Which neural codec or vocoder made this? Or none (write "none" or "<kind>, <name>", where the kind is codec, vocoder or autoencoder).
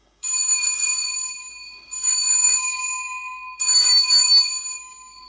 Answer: codec, DAC